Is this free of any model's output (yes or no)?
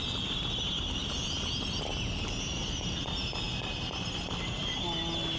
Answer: yes